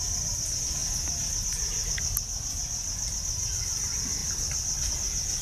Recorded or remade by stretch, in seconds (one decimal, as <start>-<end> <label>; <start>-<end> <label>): 0.0-5.4 recorded

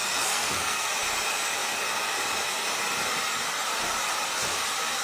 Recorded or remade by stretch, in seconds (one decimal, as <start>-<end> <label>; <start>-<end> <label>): 0.0-0.9 remade; 0.9-5.0 recorded